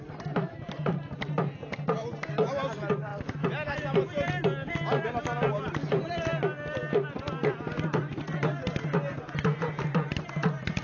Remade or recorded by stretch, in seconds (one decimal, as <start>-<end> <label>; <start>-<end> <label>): 0.0-10.8 recorded